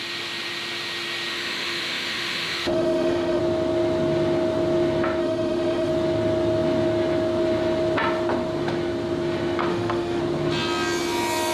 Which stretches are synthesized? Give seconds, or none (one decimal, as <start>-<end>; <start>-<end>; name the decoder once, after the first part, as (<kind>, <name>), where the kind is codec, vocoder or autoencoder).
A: 1.3-3.4 (autoencoder, DAC-VAE); 5.2-5.9; 9.7-10.2